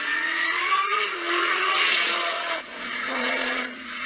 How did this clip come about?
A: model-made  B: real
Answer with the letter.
A